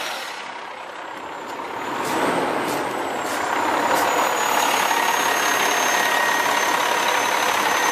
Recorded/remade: recorded